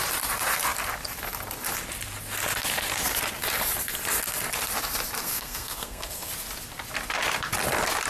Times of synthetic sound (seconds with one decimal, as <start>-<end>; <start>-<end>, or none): 5.2-6.3